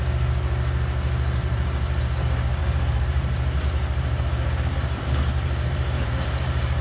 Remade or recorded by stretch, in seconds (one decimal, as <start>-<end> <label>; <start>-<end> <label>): 0.0-1.4 recorded; 1.4-2.0 remade; 2.0-2.6 recorded; 2.6-6.8 remade